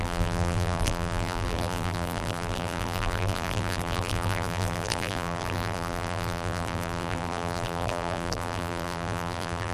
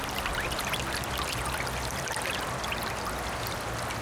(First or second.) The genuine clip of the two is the second